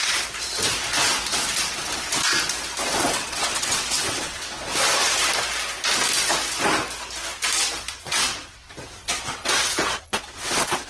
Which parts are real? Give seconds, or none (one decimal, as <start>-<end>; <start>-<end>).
0.0-3.0; 4.7-7.9